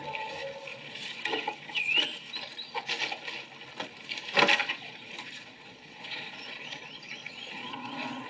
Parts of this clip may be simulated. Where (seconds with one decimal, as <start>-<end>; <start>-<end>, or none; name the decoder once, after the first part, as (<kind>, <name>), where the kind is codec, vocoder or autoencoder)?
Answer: 0.7-1.9 (vocoder, Vocos); 4.6-8.3